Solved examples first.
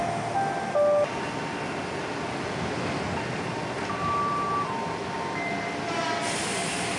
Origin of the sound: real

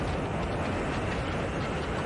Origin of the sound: real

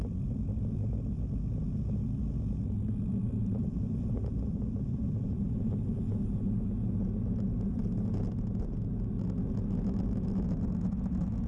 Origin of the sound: real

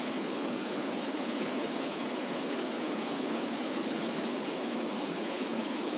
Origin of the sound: fake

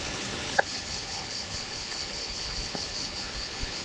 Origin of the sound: fake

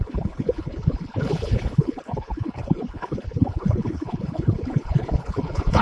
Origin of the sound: fake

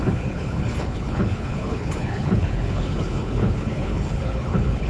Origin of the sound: fake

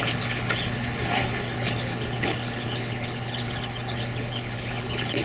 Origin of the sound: fake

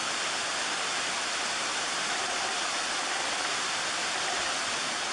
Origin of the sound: real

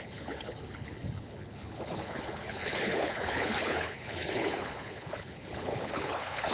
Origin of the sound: fake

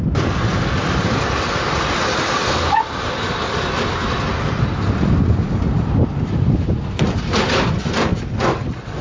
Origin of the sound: real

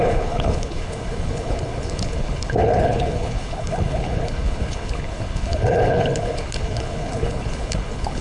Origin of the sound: fake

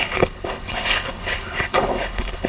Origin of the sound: fake